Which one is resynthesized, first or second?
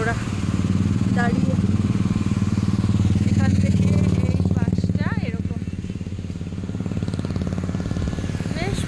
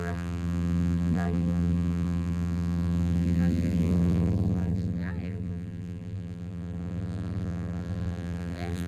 second